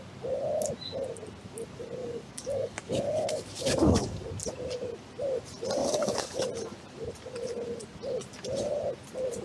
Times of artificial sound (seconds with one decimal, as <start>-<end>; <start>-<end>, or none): 2.0-4.3; 5.8-6.4